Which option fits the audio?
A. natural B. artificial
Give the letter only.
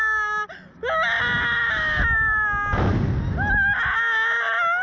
A